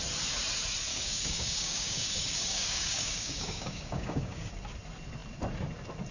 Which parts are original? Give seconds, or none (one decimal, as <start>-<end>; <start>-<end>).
0.0-0.9; 4.5-6.1